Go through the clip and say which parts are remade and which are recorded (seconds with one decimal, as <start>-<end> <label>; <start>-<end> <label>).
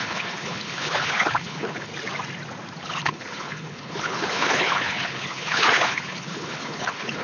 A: 0.0-1.9 remade; 1.9-2.8 recorded; 2.8-7.2 remade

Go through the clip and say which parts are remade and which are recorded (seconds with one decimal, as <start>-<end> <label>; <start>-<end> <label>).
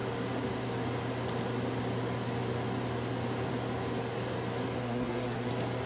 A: 0.0-4.8 recorded; 4.8-5.5 remade; 5.5-5.9 recorded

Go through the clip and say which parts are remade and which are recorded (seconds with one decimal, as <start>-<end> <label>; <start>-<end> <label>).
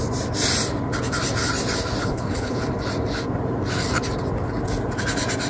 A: 0.0-2.0 recorded; 2.0-2.6 remade; 2.6-5.5 recorded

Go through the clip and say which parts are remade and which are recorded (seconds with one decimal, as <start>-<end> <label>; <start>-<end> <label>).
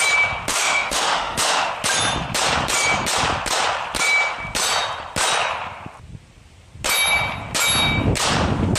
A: 0.0-0.5 recorded; 0.5-1.7 remade; 1.7-8.8 recorded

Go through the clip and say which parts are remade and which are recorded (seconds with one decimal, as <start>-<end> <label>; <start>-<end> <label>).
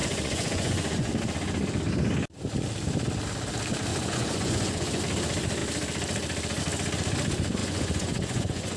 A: 0.0-1.1 remade; 1.1-3.9 recorded; 3.9-5.0 remade; 5.0-7.6 recorded; 7.6-8.8 remade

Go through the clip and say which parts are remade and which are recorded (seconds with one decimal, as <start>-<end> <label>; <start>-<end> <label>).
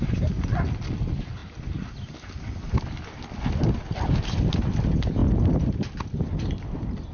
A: 0.0-7.1 recorded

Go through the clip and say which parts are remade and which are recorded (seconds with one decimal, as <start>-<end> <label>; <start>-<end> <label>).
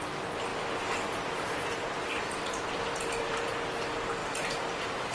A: 0.0-0.5 recorded; 0.5-3.6 remade; 3.6-4.2 recorded; 4.2-5.1 remade